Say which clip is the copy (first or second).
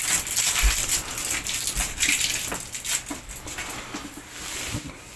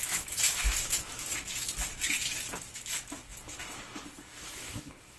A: second